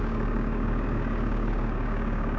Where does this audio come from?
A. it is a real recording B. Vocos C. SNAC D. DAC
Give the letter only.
D